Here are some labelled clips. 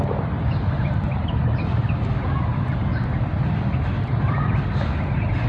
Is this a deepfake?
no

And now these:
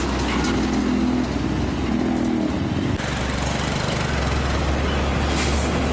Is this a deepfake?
no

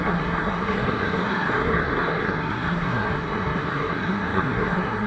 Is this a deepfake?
yes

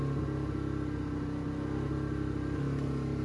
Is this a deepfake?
no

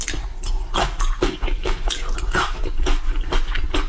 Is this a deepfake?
no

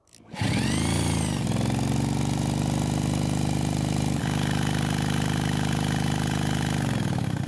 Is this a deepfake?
no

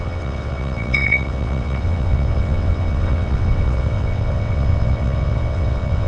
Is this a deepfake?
yes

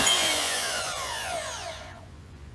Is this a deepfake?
yes